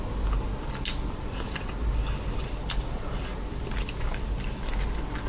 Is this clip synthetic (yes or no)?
no